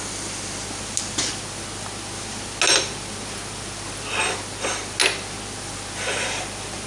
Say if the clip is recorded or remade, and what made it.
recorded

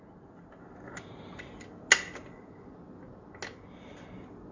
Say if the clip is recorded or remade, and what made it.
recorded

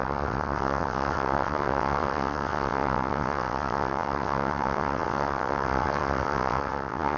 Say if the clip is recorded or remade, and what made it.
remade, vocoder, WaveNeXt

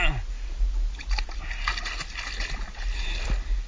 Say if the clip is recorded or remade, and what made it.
recorded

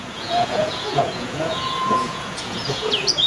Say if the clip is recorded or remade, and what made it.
remade, vocoder, Vocos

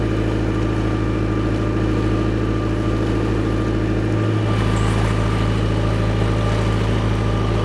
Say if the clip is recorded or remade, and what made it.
recorded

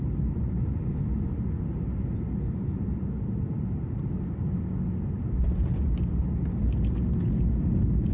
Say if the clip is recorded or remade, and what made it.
recorded